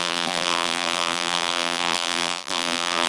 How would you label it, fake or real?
fake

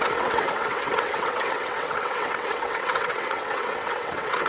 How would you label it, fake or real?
fake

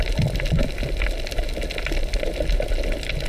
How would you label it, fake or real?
real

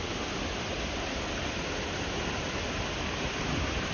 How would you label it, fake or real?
real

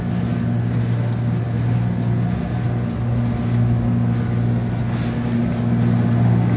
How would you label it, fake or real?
real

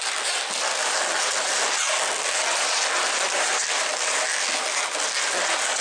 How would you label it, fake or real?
real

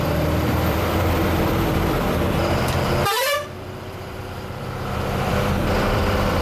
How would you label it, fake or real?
fake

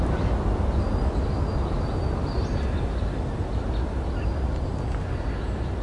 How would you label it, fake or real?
real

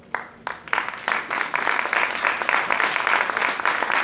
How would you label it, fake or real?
real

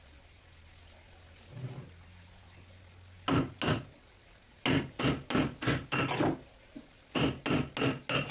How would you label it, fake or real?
real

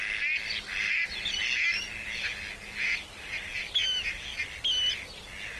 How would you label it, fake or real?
real